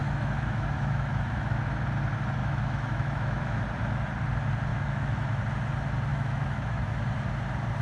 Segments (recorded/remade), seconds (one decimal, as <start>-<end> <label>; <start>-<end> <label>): 0.0-1.6 remade; 1.6-2.4 recorded; 2.4-3.6 remade; 3.6-4.7 recorded; 4.7-5.4 remade; 5.4-6.1 recorded; 6.1-7.0 remade; 7.0-7.8 recorded